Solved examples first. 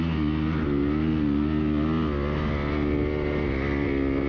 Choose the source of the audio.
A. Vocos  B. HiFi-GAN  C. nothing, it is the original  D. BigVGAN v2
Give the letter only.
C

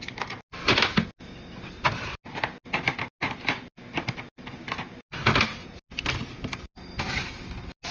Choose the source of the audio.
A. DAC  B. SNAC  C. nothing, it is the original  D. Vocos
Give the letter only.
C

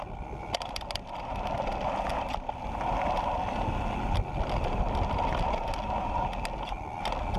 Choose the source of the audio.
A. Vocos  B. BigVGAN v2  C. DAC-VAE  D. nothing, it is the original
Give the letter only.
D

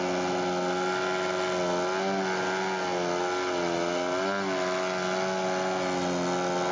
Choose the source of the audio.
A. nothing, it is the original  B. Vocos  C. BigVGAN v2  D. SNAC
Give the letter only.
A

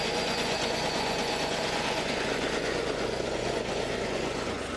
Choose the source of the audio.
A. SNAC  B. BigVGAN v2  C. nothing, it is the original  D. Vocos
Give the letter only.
D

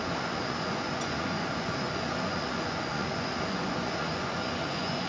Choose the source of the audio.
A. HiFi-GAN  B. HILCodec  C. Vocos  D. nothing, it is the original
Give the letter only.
C